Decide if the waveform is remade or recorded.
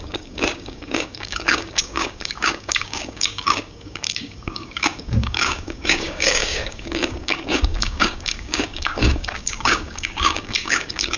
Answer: remade